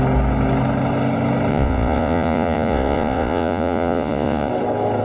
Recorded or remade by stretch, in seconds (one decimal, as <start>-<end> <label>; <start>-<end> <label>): 0.0-1.5 recorded; 1.5-4.5 remade; 4.5-5.0 recorded